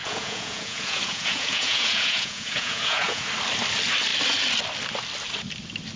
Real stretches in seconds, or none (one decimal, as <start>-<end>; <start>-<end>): 3.3-6.0